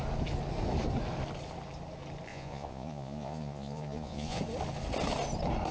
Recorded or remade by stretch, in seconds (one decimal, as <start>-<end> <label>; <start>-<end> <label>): 0.0-2.3 recorded; 2.3-4.4 remade; 4.4-5.7 recorded